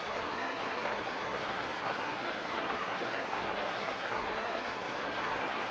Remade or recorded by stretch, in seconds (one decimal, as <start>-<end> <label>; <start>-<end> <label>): 0.0-5.7 remade